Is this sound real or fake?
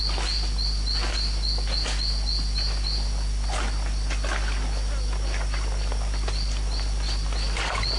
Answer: real